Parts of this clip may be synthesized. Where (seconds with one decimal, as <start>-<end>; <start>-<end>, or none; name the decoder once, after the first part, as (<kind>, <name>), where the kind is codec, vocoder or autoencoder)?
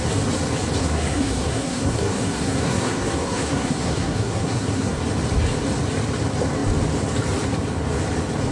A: 0.8-5.0 (codec, SNAC)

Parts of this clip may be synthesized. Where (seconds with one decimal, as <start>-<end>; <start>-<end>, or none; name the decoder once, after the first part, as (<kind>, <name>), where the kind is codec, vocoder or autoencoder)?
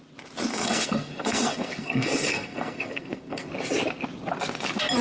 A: 0.5-3.5 (codec, SNAC)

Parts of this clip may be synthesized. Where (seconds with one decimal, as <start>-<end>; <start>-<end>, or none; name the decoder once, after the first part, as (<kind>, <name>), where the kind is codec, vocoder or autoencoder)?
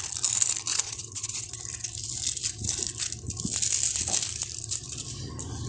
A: 0.7-1.5 (vocoder, Vocos)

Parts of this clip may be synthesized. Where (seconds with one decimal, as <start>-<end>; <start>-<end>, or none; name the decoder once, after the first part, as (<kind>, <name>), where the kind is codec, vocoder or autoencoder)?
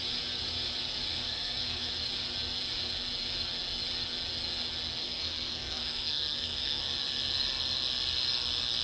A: 1.1-1.9 (codec, SNAC); 5.0-6.8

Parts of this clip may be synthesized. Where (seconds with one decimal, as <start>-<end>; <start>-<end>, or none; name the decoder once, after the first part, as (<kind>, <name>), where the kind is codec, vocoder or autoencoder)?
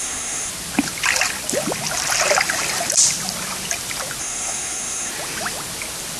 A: 0.0-0.5 (codec, SNAC); 4.2-5.1